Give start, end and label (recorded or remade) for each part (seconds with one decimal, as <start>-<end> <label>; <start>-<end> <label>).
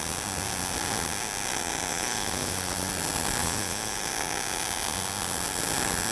0.0-1.9 recorded; 1.9-2.9 remade; 2.9-3.4 recorded; 3.4-4.1 remade; 4.1-6.1 recorded